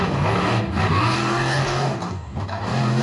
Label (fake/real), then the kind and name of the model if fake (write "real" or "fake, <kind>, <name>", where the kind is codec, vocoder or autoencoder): fake, codec, DAC